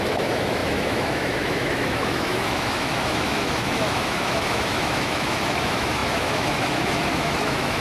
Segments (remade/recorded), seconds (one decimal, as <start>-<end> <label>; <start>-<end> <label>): 0.0-7.8 remade